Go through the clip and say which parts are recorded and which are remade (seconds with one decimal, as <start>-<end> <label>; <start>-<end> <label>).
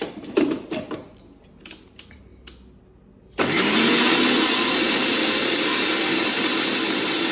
0.0-7.3 recorded